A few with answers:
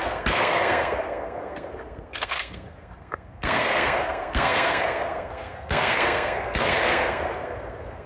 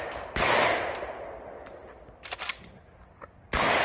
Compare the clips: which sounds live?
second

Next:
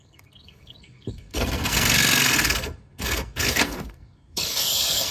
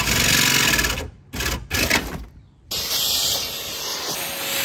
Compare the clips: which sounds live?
second